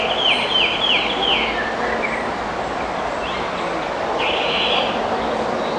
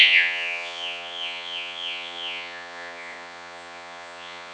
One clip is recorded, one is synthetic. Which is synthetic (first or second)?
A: second